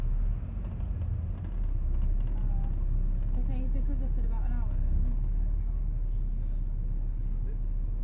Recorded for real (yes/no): yes